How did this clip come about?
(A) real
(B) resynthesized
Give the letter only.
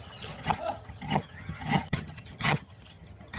B